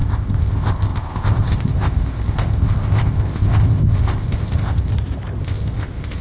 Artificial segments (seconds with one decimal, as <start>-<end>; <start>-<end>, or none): 0.0-4.9; 5.4-6.2